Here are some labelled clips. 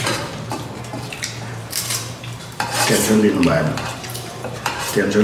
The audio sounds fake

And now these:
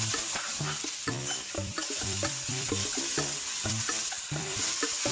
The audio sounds fake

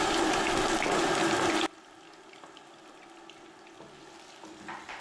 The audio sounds real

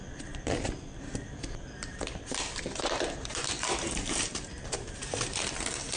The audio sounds fake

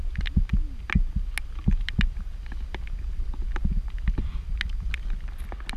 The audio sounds real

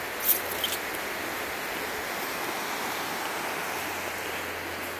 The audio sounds real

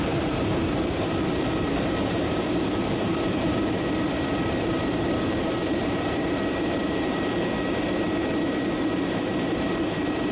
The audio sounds fake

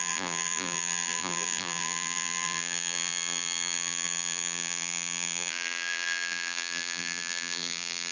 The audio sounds fake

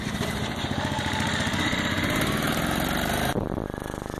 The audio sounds real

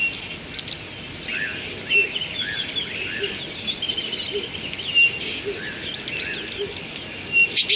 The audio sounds real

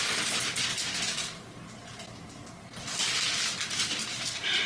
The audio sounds real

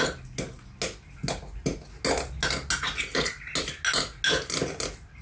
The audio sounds real